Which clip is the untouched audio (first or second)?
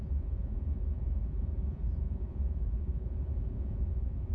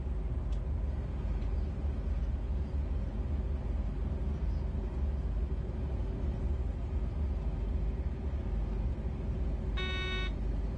second